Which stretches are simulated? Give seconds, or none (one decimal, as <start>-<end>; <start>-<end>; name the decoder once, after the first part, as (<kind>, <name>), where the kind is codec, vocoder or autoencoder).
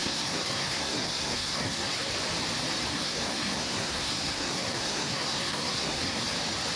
0.0-2.1 (codec, SNAC); 2.9-6.2